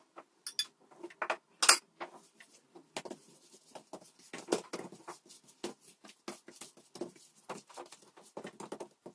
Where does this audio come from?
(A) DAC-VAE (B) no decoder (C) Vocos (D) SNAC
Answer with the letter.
B